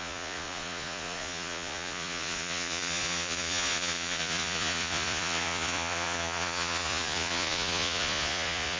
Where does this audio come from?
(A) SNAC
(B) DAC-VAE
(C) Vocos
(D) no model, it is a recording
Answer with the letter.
C